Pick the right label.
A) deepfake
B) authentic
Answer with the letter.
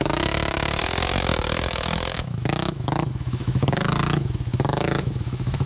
A